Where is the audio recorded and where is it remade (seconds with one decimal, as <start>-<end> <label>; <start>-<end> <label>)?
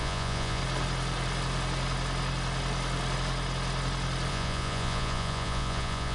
0.0-0.6 remade; 0.6-4.3 recorded; 4.3-6.1 remade